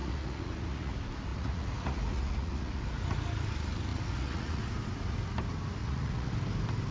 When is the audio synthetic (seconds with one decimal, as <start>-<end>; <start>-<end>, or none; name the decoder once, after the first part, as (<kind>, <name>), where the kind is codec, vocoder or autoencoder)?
0.0-0.9 (vocoder, Vocos); 1.3-2.8; 3.9-4.6; 5.8-6.3